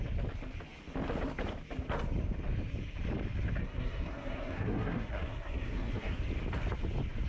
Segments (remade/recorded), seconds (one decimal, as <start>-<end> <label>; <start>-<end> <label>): 0.0-3.6 recorded; 3.6-6.2 remade; 6.2-7.3 recorded